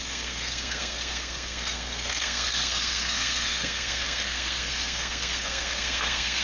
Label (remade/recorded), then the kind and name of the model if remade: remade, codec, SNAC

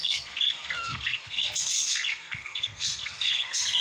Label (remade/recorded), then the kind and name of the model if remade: remade, codec, SNAC